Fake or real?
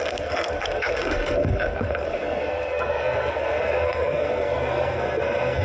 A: fake